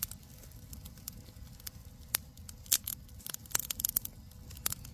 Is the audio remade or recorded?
recorded